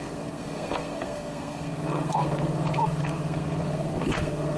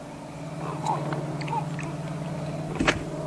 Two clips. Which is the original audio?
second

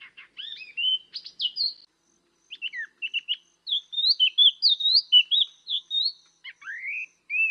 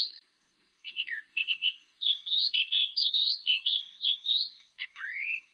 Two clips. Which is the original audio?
first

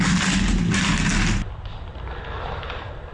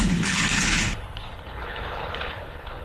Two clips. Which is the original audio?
first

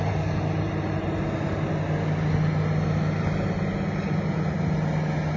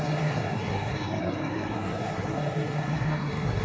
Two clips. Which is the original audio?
first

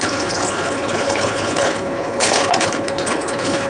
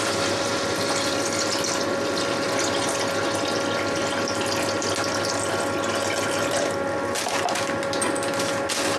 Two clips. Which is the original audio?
second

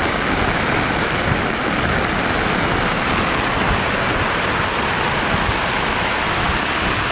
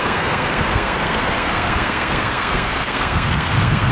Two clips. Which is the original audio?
first